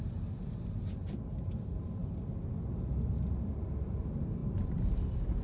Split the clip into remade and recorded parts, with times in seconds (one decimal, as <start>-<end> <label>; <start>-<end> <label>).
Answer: 0.0-5.4 recorded